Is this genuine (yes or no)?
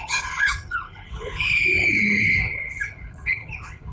no